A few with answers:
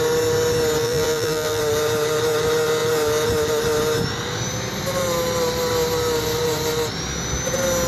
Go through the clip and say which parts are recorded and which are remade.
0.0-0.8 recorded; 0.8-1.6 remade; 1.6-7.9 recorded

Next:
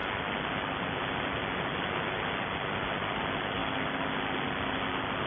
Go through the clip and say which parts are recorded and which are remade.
0.0-5.3 recorded

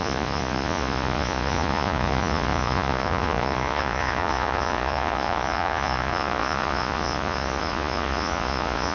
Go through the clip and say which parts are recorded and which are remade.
0.0-8.9 remade

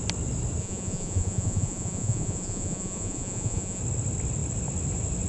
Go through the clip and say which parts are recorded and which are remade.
0.0-0.6 recorded; 0.6-3.8 remade; 3.8-5.3 recorded

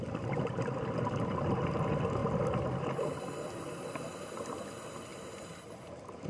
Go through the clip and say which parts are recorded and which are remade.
0.0-5.1 recorded; 5.1-6.3 remade

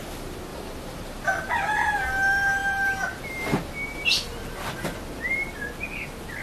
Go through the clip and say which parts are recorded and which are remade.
0.0-0.5 recorded; 0.5-1.5 remade; 1.5-2.6 recorded; 2.6-3.7 remade; 3.7-6.4 recorded

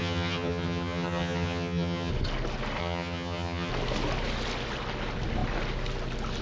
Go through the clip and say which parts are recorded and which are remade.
0.0-2.1 remade; 2.1-2.8 recorded; 2.8-3.7 remade; 3.7-6.4 recorded